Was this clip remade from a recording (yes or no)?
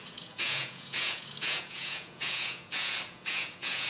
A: yes